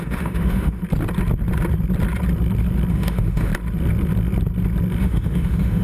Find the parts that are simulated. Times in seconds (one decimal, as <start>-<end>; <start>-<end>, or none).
0.0-0.8; 2.9-3.5; 5.0-5.8